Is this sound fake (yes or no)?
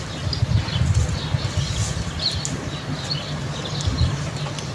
no